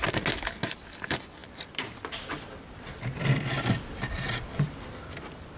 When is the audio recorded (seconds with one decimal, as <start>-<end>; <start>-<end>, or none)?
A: 0.0-5.6